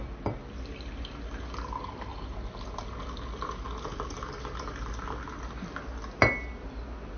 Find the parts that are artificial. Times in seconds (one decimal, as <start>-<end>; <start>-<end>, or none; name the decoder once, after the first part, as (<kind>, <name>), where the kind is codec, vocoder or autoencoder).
none